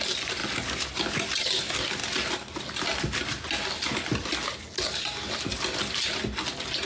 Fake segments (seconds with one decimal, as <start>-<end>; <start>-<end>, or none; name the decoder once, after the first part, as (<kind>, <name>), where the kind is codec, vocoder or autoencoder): none